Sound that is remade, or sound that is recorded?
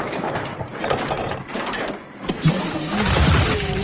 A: remade